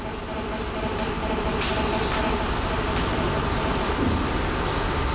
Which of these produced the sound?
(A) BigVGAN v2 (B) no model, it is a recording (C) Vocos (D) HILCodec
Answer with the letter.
B